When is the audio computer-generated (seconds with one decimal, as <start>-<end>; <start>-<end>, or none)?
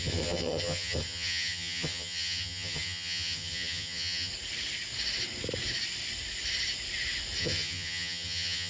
0.0-4.3; 7.4-8.7